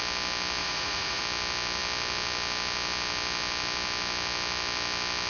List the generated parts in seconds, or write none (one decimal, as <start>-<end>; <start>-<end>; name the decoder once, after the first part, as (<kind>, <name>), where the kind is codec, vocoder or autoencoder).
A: 0.6-1.2 (vocoder, Vocos)